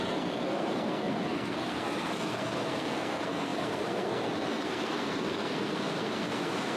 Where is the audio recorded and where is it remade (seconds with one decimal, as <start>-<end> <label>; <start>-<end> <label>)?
0.0-6.8 remade